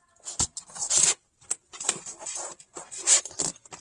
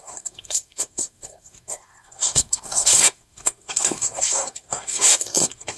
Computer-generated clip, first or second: second